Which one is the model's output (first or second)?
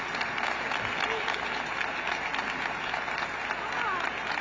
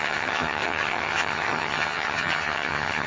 second